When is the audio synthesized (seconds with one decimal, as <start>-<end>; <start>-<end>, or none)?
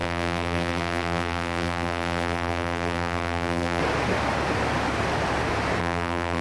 0.0-3.8; 5.8-6.4